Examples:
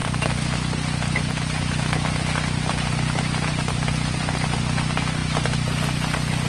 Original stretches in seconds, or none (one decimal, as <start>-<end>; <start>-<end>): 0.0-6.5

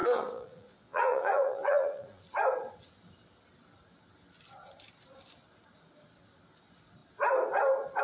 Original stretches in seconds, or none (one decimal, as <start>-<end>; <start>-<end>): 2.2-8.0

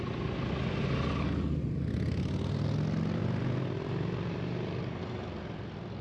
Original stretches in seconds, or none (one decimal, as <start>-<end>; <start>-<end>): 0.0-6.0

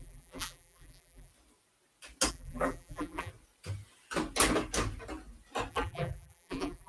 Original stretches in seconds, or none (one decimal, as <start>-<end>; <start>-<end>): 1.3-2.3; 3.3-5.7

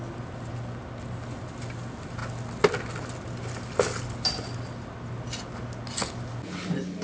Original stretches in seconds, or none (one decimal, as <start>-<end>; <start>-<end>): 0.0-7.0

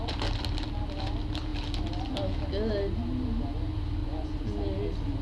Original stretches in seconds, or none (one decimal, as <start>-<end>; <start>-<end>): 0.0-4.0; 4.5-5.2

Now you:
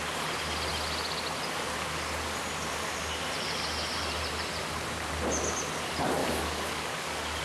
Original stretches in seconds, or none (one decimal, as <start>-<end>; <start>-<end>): 0.0-6.2

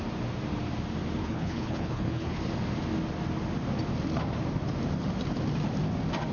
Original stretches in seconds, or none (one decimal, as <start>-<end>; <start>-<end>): 0.0-1.2; 2.4-6.3